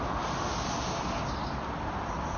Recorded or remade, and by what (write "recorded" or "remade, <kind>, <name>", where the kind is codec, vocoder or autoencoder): recorded